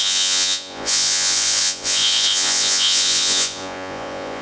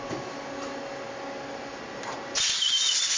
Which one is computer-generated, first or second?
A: first